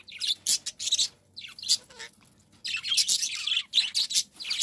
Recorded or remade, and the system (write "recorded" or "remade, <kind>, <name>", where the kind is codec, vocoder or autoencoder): recorded